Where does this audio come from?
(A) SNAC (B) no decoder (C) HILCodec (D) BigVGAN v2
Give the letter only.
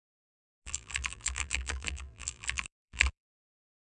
D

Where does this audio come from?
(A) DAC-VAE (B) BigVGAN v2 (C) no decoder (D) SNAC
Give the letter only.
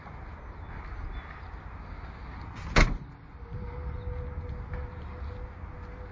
C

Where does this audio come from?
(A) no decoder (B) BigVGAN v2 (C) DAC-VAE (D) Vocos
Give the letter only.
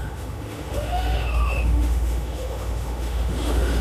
C